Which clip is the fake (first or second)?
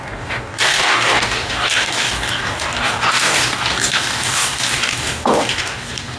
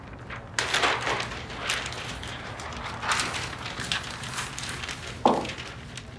first